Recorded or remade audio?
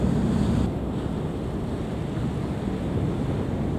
recorded